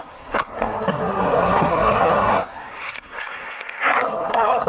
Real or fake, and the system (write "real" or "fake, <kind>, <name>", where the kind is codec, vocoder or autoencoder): fake, codec, SNAC